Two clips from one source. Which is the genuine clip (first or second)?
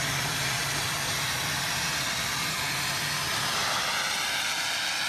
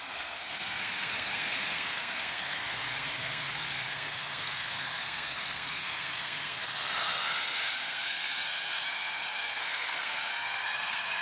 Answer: first